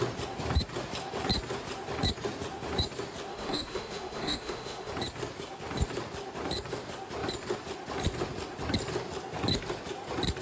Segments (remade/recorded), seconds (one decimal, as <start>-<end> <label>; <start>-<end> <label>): 0.0-3.3 recorded; 3.3-4.9 remade; 4.9-10.4 recorded